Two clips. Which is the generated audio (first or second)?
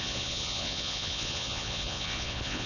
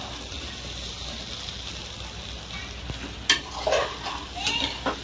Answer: first